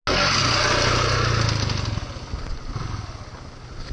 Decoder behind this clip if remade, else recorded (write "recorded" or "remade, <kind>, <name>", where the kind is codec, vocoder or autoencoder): recorded